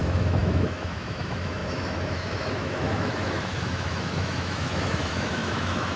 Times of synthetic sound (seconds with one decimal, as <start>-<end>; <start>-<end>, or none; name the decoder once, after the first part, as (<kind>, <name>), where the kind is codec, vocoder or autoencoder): 0.0-6.0 (autoencoder, DAC-VAE)